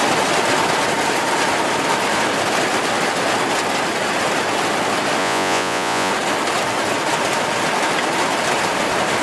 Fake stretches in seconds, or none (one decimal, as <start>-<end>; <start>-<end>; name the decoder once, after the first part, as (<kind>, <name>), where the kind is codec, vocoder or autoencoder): 5.2-6.1 (vocoder, Vocos)